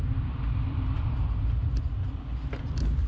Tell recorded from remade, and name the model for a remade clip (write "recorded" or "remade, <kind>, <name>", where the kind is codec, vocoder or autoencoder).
recorded